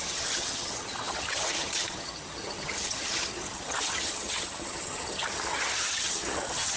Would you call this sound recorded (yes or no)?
no